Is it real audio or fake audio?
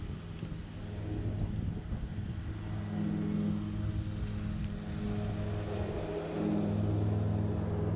real